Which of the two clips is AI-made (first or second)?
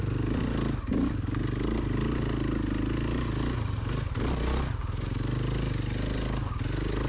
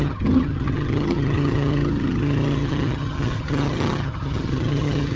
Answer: second